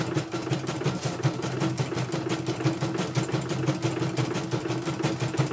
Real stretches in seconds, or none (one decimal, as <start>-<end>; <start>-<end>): 0.0-5.5